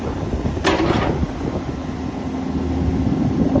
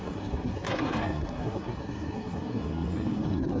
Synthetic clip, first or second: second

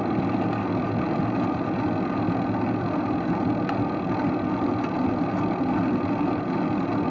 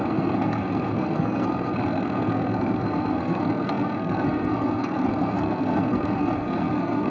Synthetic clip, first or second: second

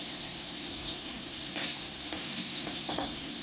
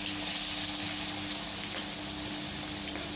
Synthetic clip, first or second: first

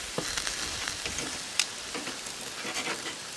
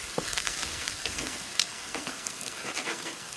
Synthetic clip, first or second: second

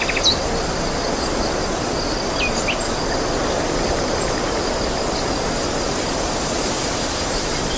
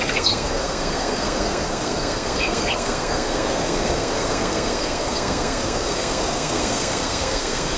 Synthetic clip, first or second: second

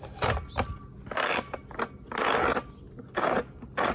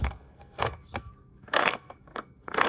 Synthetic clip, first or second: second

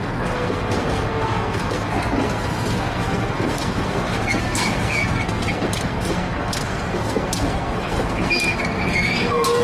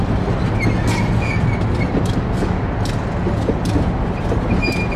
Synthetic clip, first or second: first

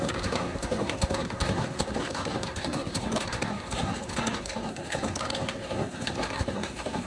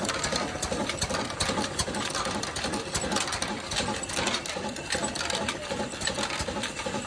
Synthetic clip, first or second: first